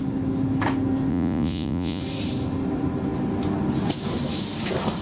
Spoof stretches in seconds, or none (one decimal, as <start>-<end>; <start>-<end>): 1.1-2.0